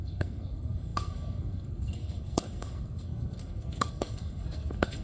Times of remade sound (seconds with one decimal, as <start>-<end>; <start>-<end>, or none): 0.0-5.0